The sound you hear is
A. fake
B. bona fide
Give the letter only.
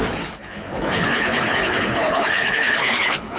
A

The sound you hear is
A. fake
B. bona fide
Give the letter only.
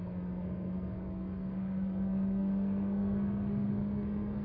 A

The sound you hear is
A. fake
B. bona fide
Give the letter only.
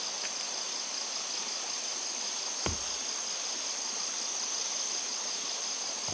B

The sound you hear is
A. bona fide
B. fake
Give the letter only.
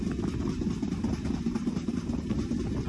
A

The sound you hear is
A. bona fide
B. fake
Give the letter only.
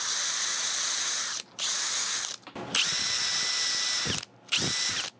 A